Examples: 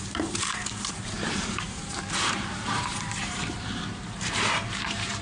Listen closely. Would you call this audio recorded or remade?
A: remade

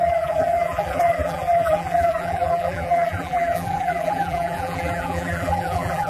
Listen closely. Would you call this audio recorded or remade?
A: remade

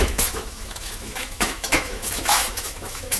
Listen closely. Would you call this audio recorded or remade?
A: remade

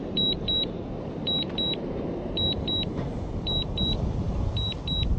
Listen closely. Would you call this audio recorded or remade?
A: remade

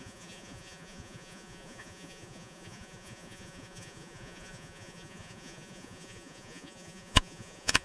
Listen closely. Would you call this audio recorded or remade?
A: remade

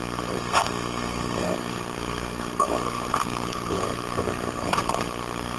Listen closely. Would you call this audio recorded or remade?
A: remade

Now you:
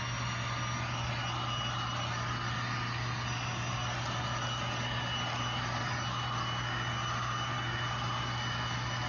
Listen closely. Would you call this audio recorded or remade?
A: recorded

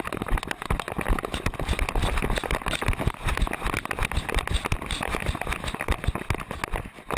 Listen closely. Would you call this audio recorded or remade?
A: recorded